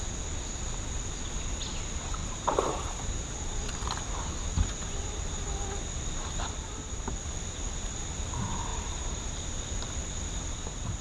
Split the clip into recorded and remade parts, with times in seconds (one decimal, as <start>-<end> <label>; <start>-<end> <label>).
0.0-2.2 recorded; 2.2-3.2 remade; 3.2-8.7 recorded; 8.7-9.3 remade; 9.3-11.0 recorded